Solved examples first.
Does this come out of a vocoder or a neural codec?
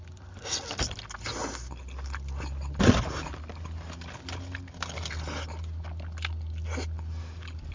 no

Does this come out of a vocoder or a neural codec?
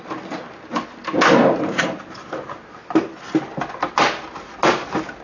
no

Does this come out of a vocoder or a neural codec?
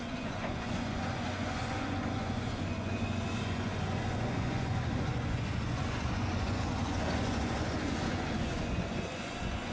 yes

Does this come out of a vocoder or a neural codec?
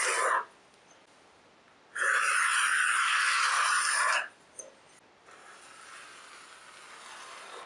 no